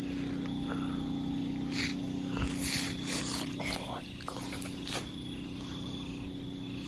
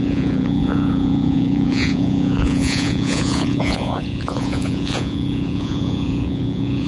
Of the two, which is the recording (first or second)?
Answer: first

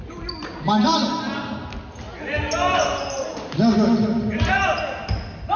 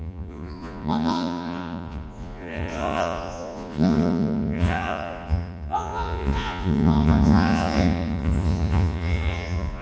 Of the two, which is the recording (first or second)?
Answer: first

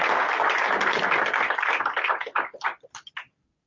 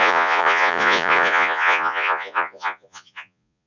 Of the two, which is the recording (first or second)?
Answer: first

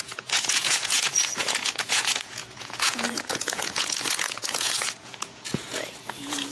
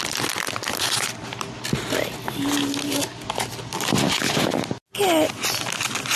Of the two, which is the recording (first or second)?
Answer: second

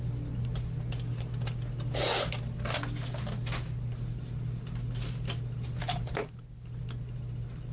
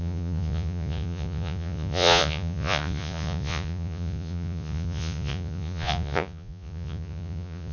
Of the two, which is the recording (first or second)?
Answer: first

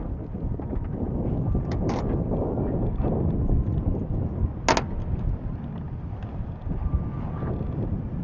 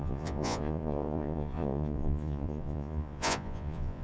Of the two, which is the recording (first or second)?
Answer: first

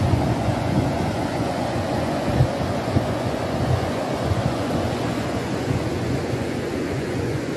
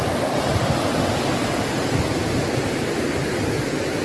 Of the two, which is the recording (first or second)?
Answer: second